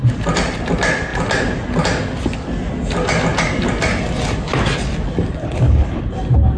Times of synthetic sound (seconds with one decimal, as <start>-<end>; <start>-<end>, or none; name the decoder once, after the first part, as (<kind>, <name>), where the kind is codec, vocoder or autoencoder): 5.4-6.0 (codec, HILCodec)